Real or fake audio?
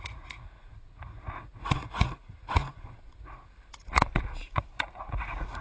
fake